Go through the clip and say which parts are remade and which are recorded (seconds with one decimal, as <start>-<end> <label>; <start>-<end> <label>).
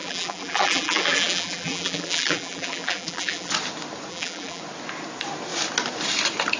0.0-3.5 remade; 3.5-4.1 recorded; 4.1-4.6 remade; 4.6-6.6 recorded